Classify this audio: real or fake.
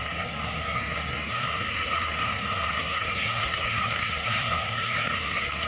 fake